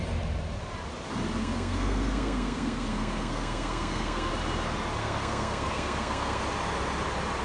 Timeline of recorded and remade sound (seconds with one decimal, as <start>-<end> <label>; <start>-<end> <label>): 0.0-1.4 recorded; 1.4-4.3 remade; 4.3-5.0 recorded; 5.0-6.4 remade; 6.4-7.4 recorded